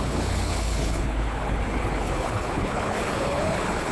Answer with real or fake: fake